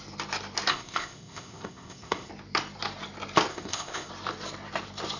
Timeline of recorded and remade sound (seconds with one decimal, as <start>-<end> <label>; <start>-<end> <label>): 0.0-0.7 recorded; 0.7-2.3 remade; 2.3-3.5 recorded; 3.5-4.1 remade; 4.1-5.2 recorded